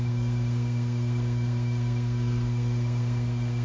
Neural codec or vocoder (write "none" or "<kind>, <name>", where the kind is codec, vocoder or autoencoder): codec, SNAC